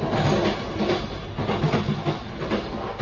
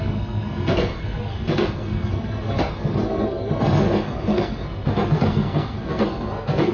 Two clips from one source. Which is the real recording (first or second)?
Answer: first